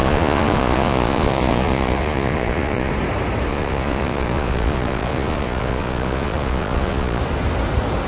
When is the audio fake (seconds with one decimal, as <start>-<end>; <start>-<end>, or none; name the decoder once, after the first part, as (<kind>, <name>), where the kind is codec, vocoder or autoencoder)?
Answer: 0.0-2.9 (vocoder, Vocos); 3.5-7.2